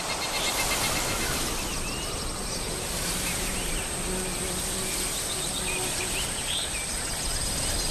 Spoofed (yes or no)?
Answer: no